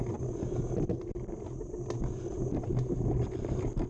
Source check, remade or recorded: recorded